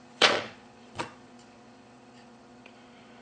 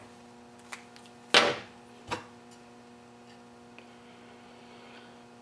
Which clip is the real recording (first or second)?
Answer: second